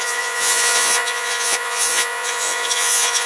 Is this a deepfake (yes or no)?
yes